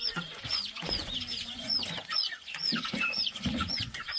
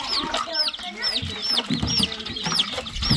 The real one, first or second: second